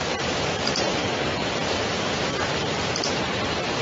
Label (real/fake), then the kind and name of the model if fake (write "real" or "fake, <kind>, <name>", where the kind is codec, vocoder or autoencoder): fake, vocoder, BigVGAN v2